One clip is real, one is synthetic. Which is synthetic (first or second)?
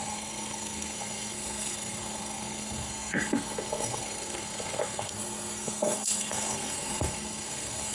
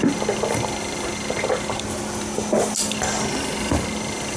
first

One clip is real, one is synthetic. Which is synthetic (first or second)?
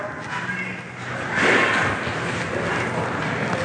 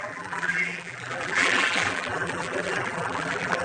second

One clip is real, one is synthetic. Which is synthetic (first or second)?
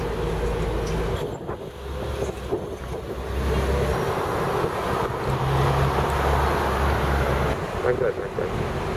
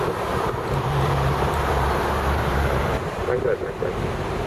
second